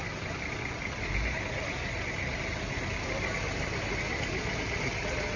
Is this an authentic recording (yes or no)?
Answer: yes